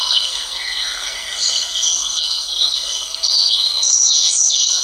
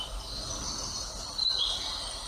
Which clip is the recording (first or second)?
second